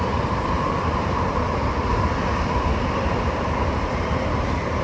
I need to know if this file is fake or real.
fake